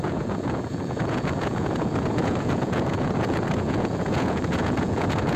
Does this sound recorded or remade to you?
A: remade